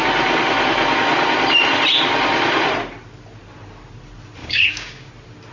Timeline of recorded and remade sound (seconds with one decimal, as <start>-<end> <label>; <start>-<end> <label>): 0.0-4.4 recorded; 4.4-5.1 remade; 5.1-5.5 recorded